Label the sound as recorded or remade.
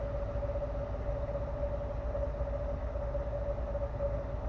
recorded